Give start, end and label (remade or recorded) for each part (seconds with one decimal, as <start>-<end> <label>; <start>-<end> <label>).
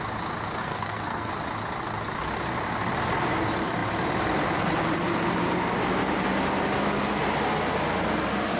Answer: 0.0-0.6 recorded; 0.6-1.3 remade; 1.3-8.6 recorded